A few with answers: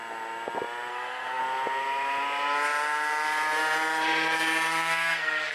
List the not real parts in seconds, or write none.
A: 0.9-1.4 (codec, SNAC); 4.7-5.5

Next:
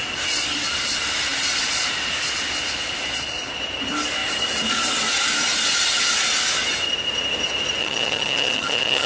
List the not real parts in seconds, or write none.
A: 7.8-9.1 (vocoder, HiFi-GAN)